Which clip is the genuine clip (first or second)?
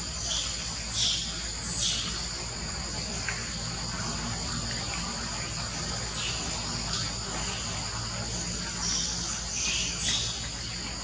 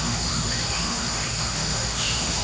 first